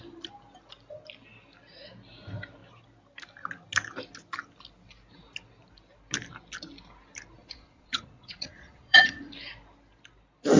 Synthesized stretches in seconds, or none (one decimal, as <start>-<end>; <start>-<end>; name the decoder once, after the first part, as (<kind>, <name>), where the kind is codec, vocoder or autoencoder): 7.4-9.2 (vocoder, Vocos)